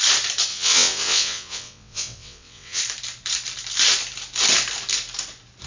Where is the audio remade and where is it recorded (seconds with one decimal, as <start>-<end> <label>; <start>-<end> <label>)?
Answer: 0.0-0.5 recorded; 0.5-2.8 remade; 2.8-5.7 recorded